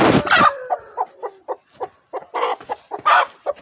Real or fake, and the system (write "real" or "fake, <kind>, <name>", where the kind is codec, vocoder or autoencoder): real